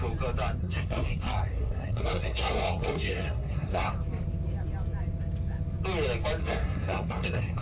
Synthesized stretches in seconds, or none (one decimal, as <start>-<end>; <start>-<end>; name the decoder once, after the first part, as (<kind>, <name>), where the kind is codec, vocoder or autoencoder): 0.6-3.9 (codec, SNAC); 6.4-7.6